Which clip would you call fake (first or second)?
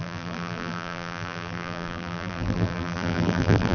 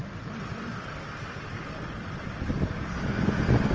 first